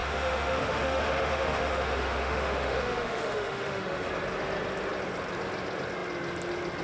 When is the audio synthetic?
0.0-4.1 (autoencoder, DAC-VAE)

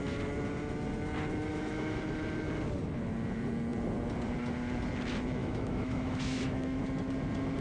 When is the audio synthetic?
1.5-2.0 (autoencoder, DAC-VAE); 5.4-6.8

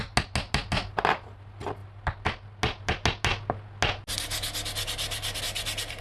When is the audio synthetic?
none

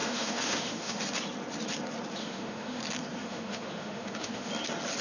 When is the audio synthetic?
0.0-1.0 (autoencoder, DAC-VAE); 2.2-2.8; 3.2-4.5